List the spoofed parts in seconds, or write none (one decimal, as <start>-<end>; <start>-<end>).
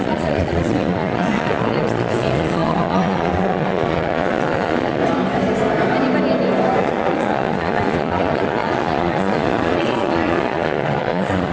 0.0-5.0; 6.8-11.5